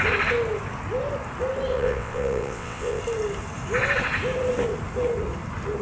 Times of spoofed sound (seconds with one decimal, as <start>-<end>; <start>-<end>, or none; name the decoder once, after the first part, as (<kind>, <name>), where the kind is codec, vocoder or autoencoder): 1.7-3.0 (vocoder, WaveNeXt)